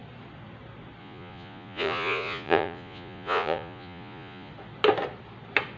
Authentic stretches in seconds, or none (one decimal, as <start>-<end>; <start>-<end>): 0.0-1.0; 4.5-5.8